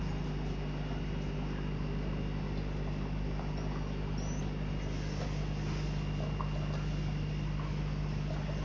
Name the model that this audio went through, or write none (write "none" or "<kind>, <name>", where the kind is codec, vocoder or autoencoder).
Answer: none